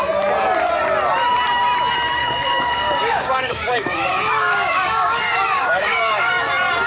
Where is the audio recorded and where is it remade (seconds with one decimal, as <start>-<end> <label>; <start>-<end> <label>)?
0.0-2.2 recorded; 2.2-6.3 remade; 6.3-6.9 recorded